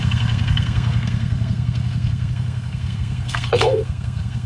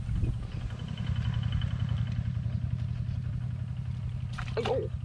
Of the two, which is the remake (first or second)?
first